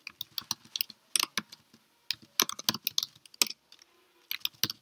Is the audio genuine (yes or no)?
yes